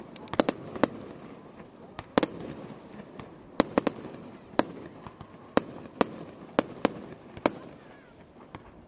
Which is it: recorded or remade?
recorded